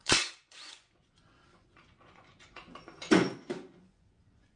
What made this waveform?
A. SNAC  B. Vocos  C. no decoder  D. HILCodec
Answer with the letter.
B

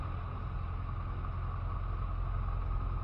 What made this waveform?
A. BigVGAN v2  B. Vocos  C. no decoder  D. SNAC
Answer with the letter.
C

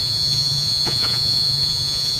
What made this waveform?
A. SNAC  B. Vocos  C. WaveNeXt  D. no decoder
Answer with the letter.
B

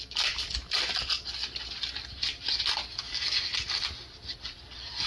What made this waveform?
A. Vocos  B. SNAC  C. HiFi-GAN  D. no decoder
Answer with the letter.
D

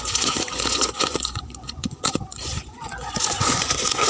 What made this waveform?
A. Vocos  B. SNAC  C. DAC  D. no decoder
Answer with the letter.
A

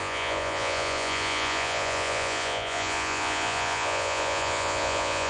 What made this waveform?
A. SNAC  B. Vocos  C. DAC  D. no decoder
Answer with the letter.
B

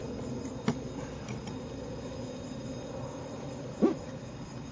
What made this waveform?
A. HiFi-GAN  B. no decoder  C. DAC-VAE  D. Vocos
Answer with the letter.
B